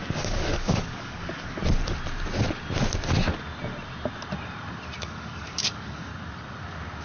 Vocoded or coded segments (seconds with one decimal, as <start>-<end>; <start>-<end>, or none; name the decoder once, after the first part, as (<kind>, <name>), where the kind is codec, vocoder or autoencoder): 0.0-1.6 (codec, DAC); 5.0-6.1